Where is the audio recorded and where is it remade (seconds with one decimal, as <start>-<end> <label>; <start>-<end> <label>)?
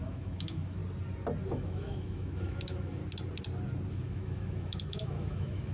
0.0-0.8 remade; 0.8-1.5 recorded; 1.5-3.0 remade; 3.0-3.9 recorded; 3.9-5.7 remade